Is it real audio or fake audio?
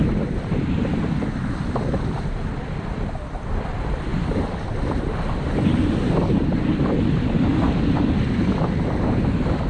fake